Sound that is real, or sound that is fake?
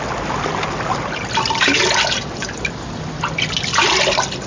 real